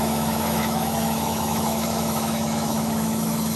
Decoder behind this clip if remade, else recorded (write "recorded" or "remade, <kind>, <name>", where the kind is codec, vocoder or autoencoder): remade, autoencoder, DAC-VAE